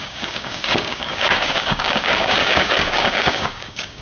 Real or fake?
fake